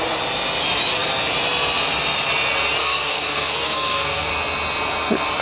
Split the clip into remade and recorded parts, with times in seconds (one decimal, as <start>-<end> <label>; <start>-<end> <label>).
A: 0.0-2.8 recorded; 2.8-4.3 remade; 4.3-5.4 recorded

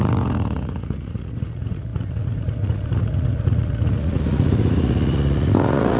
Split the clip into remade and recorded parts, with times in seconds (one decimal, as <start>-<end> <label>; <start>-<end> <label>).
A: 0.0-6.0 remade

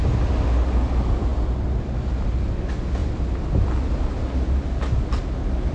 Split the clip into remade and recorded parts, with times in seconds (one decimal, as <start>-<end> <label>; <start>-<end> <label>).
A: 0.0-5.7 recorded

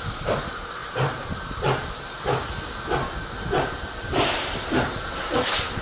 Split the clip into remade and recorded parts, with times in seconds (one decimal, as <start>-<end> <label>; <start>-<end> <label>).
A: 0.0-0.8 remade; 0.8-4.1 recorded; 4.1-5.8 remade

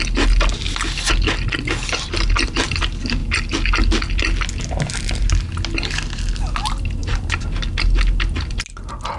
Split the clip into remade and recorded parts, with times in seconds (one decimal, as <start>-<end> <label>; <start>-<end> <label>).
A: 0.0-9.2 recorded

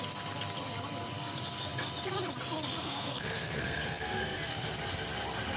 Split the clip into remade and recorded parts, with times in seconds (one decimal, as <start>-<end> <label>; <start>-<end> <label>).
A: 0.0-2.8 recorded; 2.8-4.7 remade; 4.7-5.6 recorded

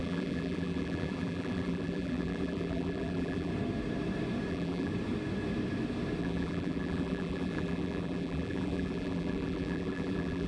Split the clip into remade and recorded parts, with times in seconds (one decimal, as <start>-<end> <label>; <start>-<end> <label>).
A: 0.0-3.5 remade; 3.5-4.5 recorded; 4.5-4.9 remade; 4.9-6.2 recorded; 6.2-10.5 remade